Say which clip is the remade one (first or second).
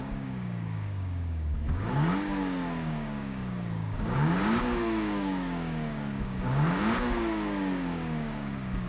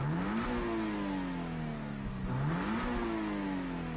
first